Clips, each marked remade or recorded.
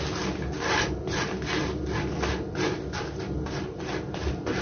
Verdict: recorded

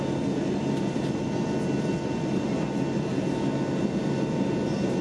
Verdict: recorded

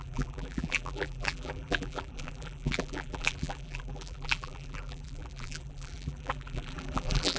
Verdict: remade